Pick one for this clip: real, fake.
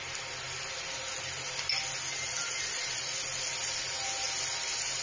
real